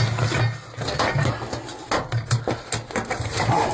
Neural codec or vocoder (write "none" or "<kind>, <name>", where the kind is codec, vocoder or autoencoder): none